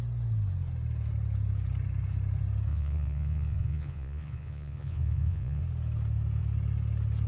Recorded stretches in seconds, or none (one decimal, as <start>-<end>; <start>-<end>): 0.0-2.7; 5.6-7.3